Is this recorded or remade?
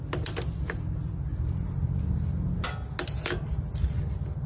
recorded